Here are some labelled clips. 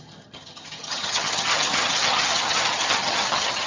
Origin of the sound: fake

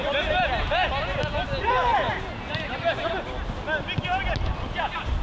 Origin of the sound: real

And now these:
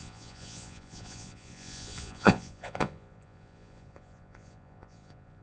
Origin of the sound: fake